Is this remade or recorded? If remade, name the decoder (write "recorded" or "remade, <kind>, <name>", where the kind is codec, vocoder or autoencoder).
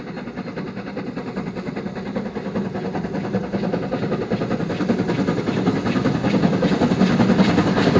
recorded